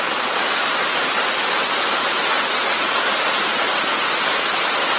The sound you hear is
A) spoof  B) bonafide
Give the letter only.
B